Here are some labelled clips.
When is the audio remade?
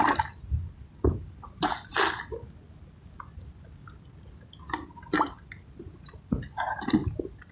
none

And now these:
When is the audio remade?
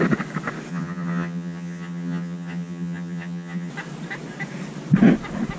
0.7-3.7 (vocoder, HiFi-GAN)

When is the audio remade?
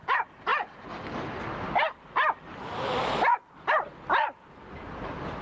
none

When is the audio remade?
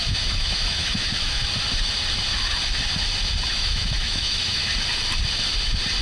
0.0-1.4 (autoencoder, DAC-VAE); 3.5-4.6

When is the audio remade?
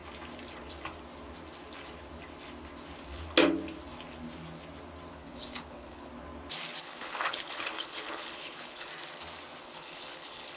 5.1-6.1 (codec, HILCodec); 6.8-8.9; 9.6-10.6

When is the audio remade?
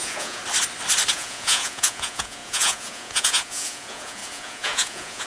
0.0-0.4 (vocoder, Vocos); 1.1-5.3